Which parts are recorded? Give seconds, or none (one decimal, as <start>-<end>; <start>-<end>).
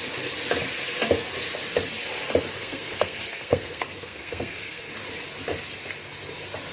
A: 0.0-2.5; 4.9-6.7